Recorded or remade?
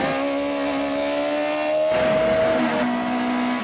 recorded